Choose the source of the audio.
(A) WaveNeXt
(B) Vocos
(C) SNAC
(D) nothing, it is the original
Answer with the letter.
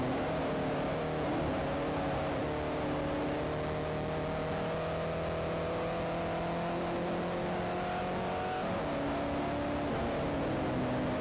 D